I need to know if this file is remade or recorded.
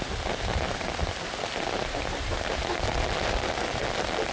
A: recorded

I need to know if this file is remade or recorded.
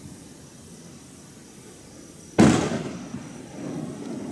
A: remade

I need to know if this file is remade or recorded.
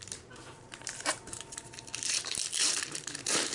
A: remade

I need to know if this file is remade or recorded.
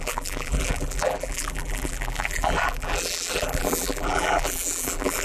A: remade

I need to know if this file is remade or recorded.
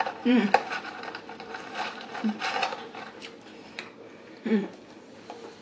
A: remade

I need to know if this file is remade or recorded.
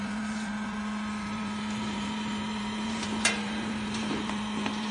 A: remade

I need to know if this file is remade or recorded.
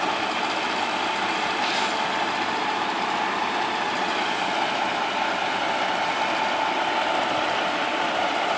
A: recorded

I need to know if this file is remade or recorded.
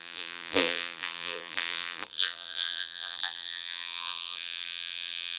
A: remade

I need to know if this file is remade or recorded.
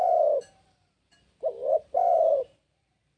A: remade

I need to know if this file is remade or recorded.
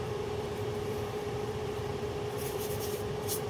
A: remade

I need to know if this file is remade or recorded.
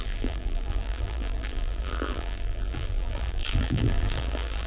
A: remade